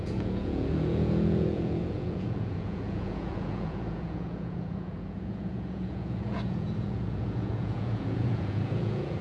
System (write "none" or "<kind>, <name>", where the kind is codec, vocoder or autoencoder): vocoder, Vocos